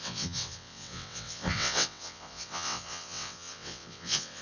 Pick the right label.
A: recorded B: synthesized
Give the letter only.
B